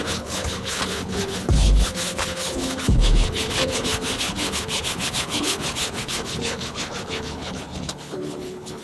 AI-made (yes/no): yes